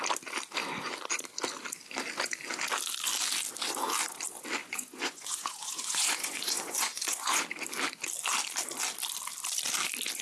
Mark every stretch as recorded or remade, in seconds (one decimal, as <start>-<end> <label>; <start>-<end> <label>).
0.0-4.6 recorded; 4.6-7.4 remade; 7.4-10.2 recorded